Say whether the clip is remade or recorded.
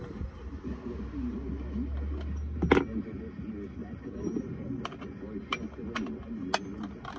recorded